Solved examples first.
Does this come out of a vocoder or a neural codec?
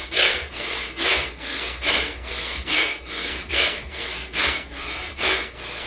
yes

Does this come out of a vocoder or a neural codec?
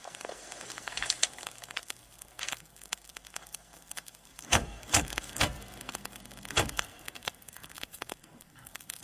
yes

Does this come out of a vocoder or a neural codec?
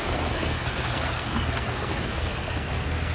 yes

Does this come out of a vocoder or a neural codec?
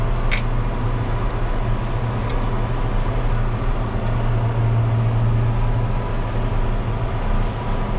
no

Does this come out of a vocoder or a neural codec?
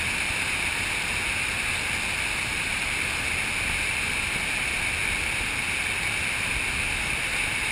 no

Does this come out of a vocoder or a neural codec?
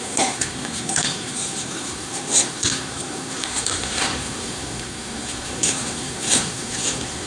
yes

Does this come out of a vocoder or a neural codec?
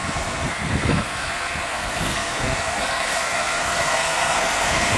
yes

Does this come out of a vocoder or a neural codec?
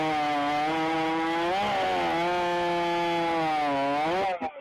no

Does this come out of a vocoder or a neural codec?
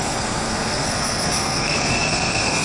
yes